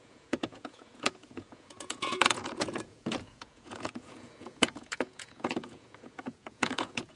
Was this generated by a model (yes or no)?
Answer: yes